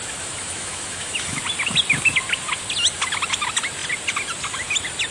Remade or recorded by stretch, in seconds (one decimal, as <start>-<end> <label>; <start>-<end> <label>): 0.0-1.4 remade; 1.4-5.1 recorded